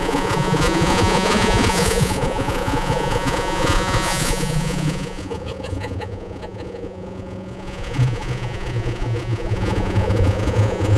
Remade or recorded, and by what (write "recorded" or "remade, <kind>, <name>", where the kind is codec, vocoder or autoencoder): remade, vocoder, Vocos